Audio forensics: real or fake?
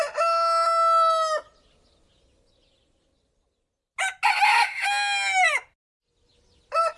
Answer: real